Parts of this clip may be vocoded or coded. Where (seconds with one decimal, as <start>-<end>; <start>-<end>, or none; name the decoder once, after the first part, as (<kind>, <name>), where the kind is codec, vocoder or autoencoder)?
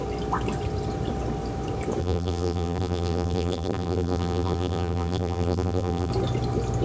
2.0-6.1 (vocoder, BigVGAN v2)